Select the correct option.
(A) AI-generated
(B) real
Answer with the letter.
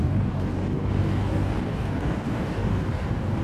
A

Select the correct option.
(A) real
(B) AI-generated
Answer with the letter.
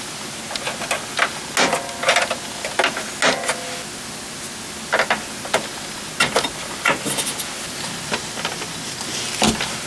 A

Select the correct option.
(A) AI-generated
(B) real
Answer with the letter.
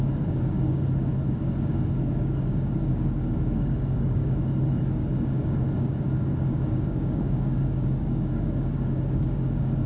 A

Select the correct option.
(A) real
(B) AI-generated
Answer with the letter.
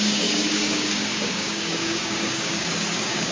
B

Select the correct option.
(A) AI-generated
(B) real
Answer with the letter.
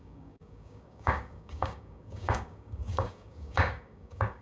A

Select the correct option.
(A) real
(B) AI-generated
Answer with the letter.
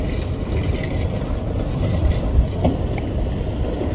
A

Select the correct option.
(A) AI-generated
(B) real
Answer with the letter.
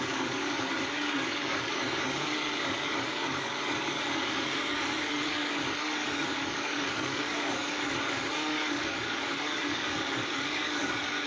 A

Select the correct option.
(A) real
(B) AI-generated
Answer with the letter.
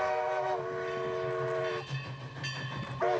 A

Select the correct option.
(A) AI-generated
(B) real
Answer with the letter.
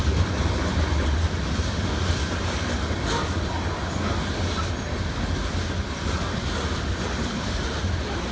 B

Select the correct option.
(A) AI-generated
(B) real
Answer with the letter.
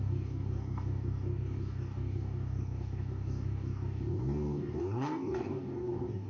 A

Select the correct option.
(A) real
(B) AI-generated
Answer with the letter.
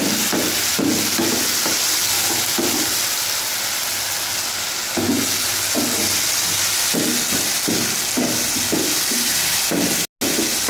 A